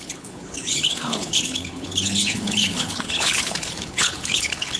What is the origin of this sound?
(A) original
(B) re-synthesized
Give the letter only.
B